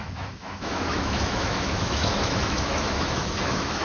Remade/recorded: remade